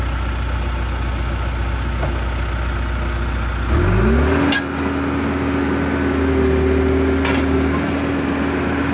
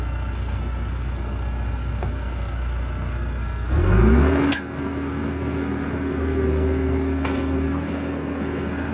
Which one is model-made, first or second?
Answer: second